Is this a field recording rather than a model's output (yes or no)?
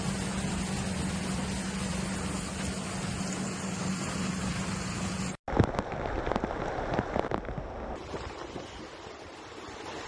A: yes